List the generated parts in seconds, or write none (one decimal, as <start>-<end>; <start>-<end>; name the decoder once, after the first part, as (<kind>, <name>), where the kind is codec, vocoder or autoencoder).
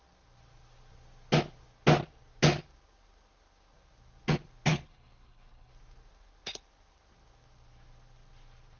4.7-5.7 (codec, HILCodec)